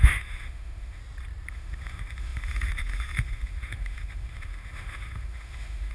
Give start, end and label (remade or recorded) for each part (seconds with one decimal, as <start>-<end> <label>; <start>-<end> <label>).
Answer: 0.0-1.0 remade; 1.0-1.5 recorded; 1.5-5.9 remade